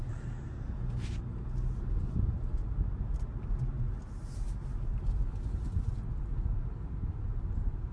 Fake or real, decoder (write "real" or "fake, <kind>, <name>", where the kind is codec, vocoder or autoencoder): real